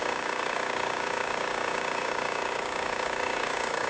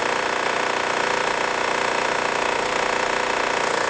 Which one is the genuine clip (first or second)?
second